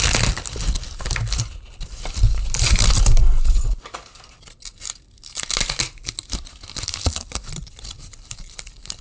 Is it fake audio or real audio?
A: real